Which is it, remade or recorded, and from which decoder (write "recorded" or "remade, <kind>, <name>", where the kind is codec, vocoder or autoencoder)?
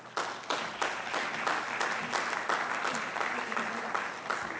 recorded